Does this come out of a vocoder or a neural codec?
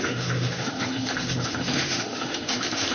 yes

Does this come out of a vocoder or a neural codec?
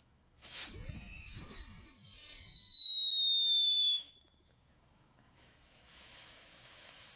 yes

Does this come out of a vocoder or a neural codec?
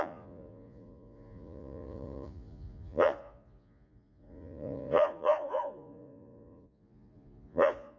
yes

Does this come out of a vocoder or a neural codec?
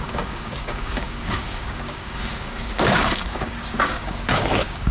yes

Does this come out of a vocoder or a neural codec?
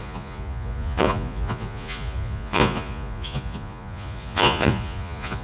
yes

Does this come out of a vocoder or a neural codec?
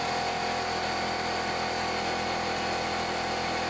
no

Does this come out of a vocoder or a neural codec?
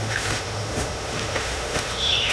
yes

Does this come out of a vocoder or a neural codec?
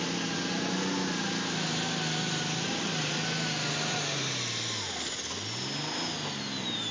no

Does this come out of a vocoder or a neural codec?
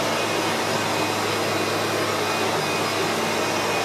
no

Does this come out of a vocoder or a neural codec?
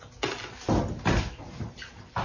no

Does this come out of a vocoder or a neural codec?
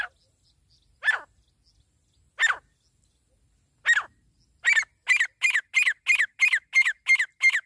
no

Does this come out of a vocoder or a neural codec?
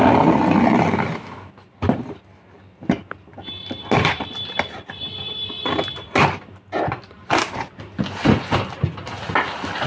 no